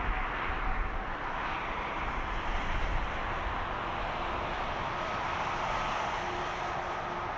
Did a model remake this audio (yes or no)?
no